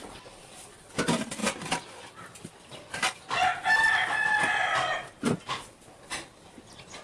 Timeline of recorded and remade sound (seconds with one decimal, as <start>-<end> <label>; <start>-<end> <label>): 0.0-7.0 recorded